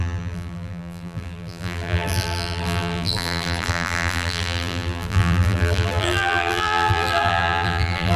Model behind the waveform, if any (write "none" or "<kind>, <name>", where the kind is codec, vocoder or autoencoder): vocoder, BigVGAN v2